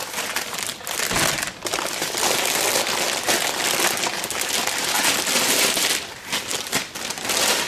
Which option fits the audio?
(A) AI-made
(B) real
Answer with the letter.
B